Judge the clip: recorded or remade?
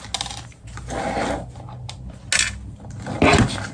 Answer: recorded